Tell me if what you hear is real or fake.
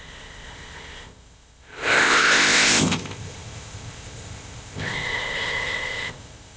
fake